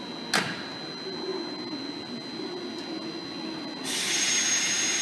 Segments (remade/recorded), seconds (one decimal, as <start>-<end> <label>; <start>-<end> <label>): 0.0-5.0 recorded